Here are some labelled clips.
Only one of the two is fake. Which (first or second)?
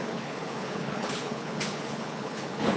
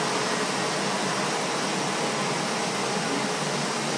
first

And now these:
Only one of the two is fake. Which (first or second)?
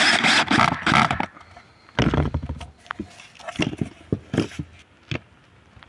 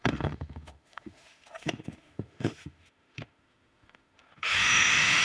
second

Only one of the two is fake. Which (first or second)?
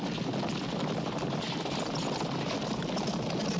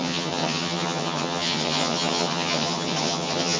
second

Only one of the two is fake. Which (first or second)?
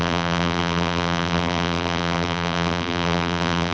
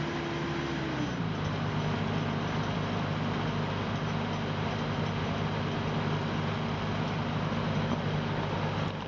first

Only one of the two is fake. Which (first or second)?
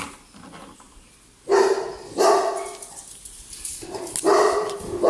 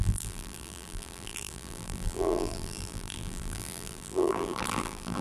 second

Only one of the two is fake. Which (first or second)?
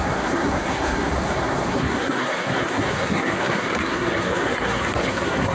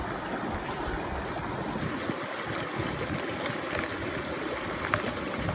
first